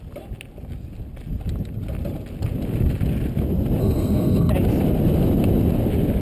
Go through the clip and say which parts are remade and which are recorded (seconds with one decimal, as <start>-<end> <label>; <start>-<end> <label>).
0.0-3.8 recorded; 3.8-4.5 remade; 4.5-6.2 recorded